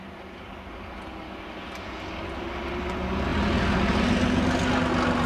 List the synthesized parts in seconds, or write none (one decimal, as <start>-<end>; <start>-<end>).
none